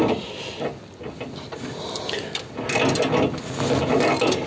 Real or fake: real